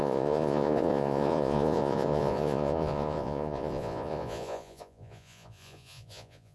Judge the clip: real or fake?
fake